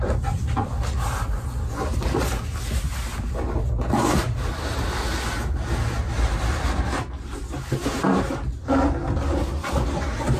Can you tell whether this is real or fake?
real